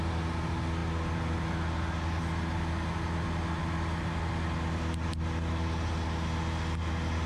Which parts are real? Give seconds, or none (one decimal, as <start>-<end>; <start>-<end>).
0.0-7.3